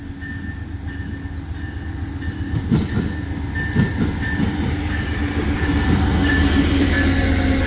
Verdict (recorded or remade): recorded